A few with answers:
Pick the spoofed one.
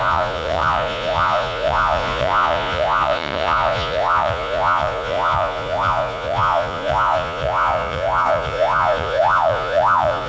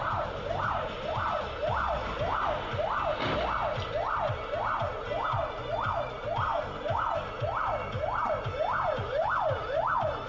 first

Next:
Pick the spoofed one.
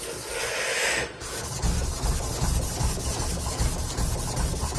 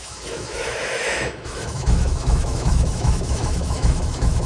second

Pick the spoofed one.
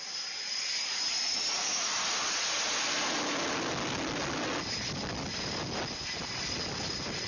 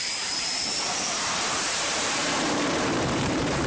second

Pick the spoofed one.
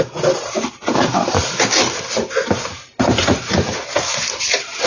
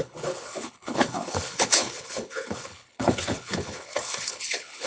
second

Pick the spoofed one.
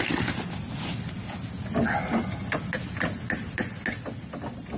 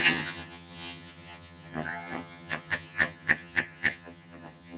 second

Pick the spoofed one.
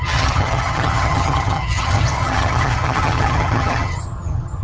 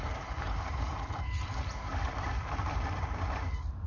first